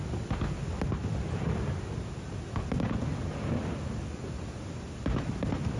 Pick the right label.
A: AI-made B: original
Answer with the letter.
B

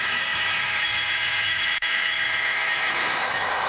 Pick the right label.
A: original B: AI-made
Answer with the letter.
B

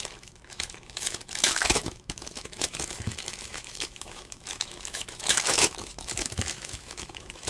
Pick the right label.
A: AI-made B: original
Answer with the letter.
A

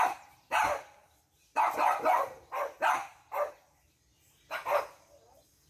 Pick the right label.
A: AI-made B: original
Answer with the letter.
B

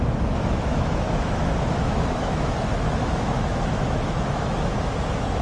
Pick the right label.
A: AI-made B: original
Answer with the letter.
A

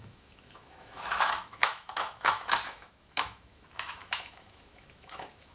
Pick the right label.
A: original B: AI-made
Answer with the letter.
B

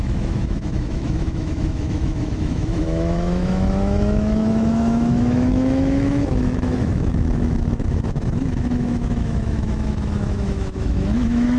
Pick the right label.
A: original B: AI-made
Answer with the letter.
B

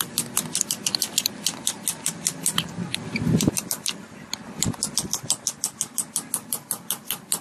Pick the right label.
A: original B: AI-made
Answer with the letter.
A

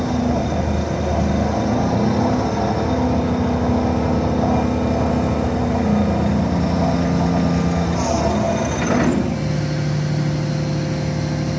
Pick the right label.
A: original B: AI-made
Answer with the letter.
A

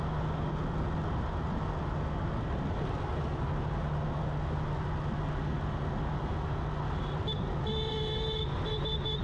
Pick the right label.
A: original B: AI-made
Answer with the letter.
A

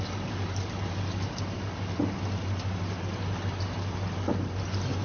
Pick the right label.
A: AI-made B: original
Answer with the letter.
B